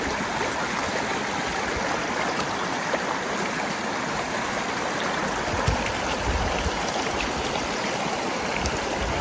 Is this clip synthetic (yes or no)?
no